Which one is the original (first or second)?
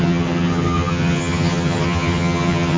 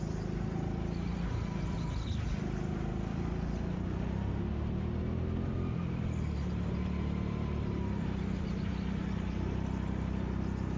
second